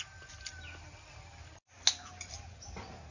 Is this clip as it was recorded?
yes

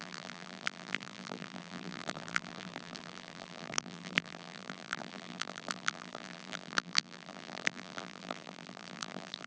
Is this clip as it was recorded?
no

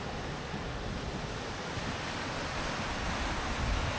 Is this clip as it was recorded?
yes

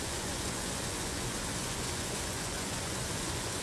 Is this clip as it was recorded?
no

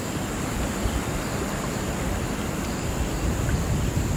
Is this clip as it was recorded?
yes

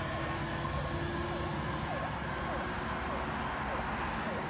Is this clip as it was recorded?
yes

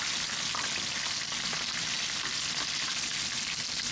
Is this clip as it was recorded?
yes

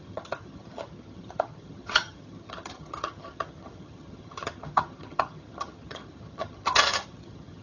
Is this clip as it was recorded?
no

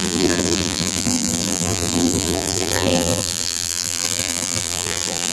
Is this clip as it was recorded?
no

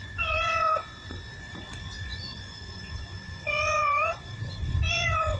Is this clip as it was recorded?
no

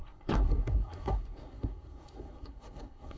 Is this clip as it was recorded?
no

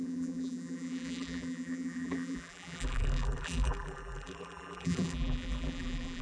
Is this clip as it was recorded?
no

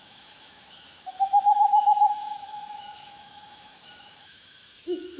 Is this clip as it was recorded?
no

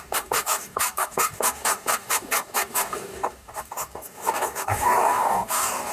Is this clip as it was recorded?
no